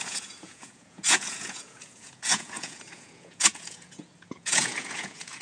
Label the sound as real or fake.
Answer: fake